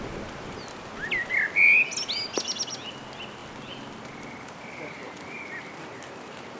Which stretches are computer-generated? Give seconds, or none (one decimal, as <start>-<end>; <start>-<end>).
none